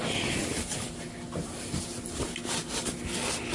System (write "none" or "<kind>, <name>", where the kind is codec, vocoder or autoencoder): none